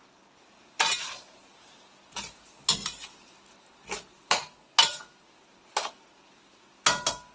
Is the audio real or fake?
real